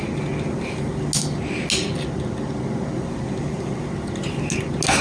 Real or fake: real